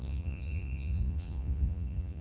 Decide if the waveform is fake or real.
fake